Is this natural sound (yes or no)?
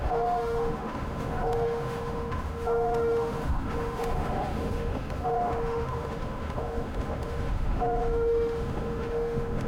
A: no